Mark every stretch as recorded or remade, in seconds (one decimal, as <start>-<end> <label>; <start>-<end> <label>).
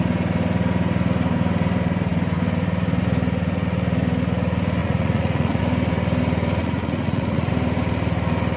0.0-4.8 recorded; 4.8-5.6 remade; 5.6-6.6 recorded; 6.6-7.5 remade; 7.5-8.6 recorded